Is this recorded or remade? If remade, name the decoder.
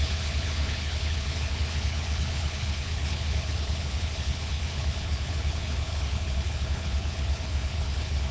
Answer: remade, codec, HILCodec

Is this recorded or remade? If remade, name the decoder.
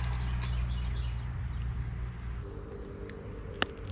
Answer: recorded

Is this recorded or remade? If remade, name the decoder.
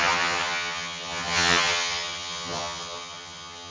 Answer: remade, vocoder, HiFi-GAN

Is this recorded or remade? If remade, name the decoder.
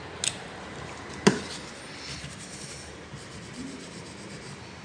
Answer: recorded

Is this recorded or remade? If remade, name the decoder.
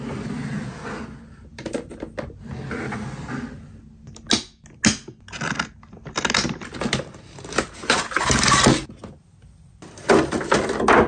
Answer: recorded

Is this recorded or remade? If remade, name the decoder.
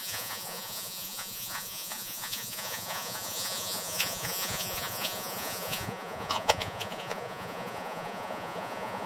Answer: remade, vocoder, Vocos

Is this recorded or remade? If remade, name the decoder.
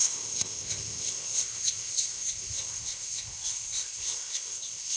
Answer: remade, codec, ZipCodec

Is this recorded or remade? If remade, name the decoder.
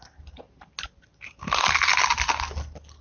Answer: recorded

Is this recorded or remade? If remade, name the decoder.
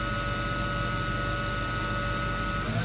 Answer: recorded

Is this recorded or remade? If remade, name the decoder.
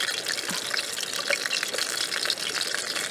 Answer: recorded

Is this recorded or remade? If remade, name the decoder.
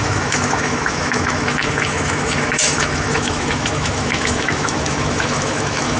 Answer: remade, autoencoder, DAC-VAE